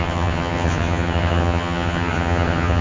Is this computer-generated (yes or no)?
yes